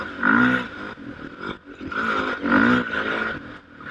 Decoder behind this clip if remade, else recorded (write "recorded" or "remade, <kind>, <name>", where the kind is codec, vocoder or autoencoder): recorded